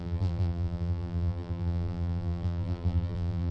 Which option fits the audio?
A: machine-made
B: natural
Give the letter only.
A